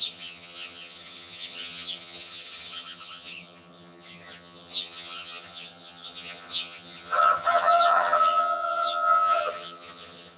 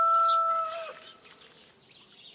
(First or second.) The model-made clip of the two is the first